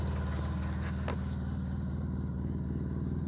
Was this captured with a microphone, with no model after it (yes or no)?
yes